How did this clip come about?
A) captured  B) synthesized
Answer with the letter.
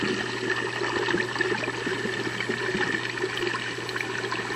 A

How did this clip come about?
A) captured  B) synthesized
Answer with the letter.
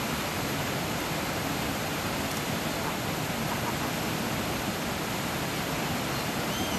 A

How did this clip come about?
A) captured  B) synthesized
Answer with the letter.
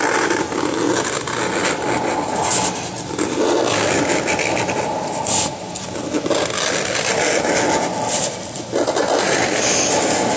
A